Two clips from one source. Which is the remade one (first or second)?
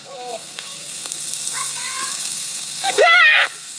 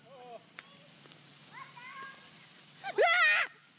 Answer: first